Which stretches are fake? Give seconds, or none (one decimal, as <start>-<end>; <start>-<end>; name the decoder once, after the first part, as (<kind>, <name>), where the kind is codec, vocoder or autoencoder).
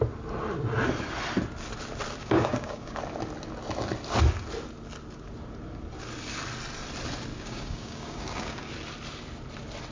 2.2-3.0 (codec, DAC); 7.3-8.7